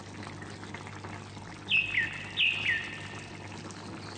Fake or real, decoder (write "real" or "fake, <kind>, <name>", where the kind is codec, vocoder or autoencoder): real